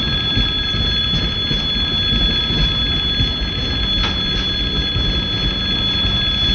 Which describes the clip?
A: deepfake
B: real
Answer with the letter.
B